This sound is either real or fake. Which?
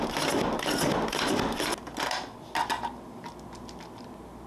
real